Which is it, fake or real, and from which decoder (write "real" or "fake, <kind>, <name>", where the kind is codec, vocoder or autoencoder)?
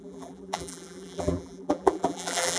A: fake, vocoder, BigVGAN v2